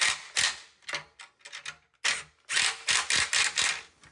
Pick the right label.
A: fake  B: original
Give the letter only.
B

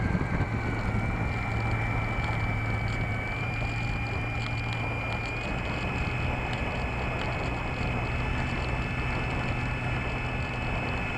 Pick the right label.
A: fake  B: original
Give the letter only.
B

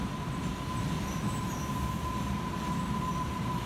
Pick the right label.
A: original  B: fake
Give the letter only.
A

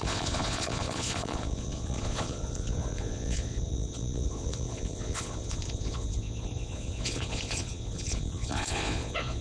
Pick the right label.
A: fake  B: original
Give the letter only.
A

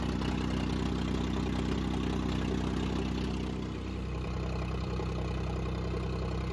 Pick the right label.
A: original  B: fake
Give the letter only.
A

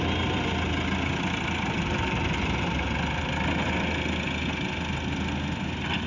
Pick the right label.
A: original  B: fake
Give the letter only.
A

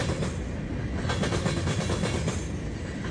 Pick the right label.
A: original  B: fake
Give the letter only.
A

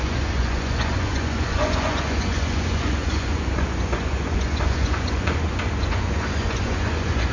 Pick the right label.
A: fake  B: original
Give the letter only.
A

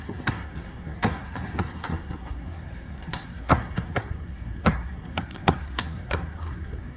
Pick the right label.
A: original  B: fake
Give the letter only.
B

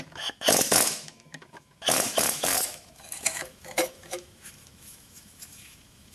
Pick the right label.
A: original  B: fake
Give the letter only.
B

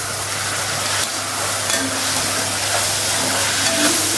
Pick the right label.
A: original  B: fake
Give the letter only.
A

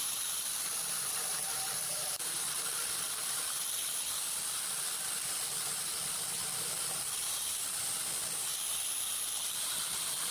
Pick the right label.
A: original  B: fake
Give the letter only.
B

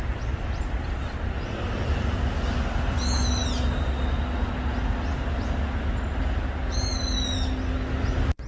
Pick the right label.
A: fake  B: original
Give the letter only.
B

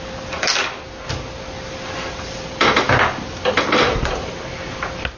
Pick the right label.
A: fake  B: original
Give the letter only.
B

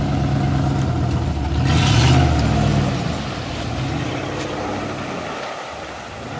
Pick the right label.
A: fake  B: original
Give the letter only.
B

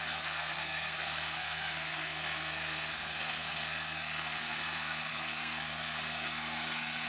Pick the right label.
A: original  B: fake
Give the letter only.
B